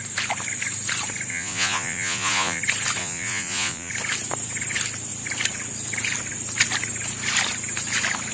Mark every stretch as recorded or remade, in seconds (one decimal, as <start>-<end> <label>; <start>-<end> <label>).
0.0-1.3 recorded; 1.3-2.6 remade; 2.6-3.0 recorded; 3.0-3.9 remade; 3.9-8.3 recorded

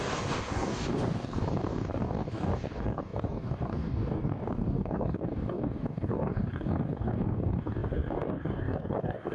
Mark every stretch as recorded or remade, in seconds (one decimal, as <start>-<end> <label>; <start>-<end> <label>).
0.0-9.3 remade